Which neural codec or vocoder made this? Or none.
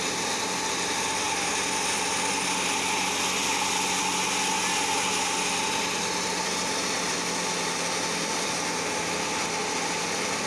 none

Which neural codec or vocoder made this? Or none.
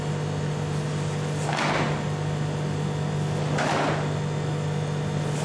none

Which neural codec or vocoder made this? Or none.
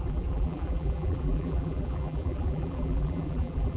vocoder, BigVGAN v2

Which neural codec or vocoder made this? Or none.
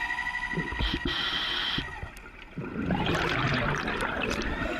none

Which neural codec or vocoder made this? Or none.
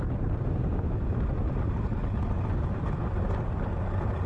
none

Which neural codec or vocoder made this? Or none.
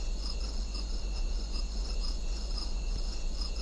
vocoder, Vocos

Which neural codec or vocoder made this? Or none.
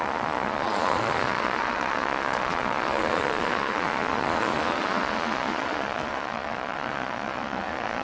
vocoder, Vocos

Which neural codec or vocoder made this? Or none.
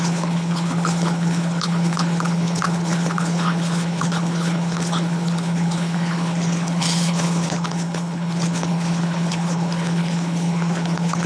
codec, HILCodec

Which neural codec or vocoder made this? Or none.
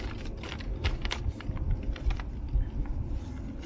none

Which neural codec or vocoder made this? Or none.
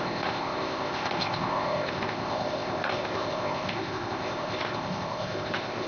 codec, ZipCodec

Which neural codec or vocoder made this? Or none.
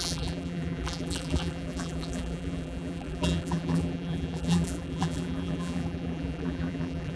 vocoder, BigVGAN v2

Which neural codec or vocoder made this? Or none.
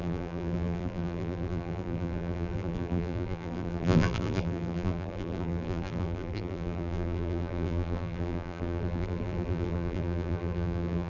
vocoder, BigVGAN v2